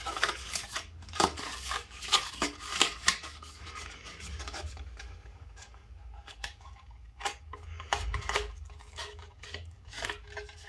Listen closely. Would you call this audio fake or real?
fake